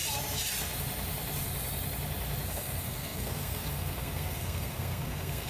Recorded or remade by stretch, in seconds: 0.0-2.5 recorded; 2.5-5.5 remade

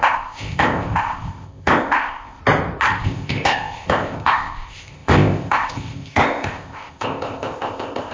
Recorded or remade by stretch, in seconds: 0.0-2.4 remade; 2.4-3.0 recorded; 3.0-8.1 remade

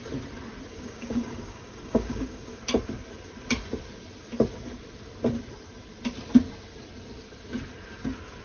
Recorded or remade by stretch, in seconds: 0.0-0.7 recorded; 0.7-2.6 remade; 2.6-8.4 recorded

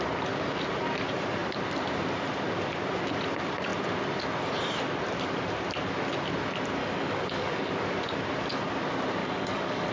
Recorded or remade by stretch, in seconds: 0.0-6.8 recorded; 6.8-7.7 remade; 7.7-9.2 recorded; 9.2-9.9 remade

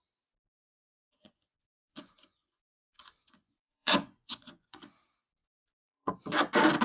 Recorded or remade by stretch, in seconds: 0.0-0.7 recorded; 0.7-4.8 remade; 4.8-5.4 recorded; 5.4-6.1 remade; 6.1-6.8 recorded